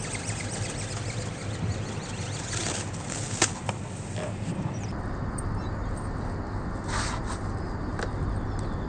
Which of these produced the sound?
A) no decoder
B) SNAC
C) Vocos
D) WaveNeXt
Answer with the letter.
A